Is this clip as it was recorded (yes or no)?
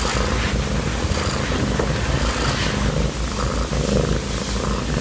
yes